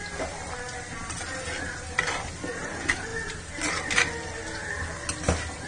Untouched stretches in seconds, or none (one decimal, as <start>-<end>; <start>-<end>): 0.0-5.7